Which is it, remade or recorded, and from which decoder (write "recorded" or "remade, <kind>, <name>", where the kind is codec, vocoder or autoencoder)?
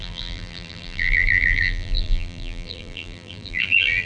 remade, vocoder, BigVGAN v2